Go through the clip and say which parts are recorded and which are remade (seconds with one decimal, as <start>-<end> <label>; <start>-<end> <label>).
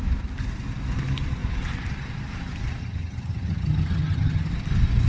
0.0-2.8 recorded; 2.8-4.5 remade; 4.5-5.1 recorded